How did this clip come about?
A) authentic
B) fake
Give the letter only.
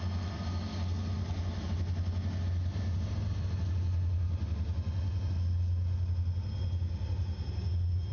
A